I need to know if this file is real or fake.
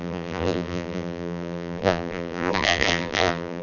fake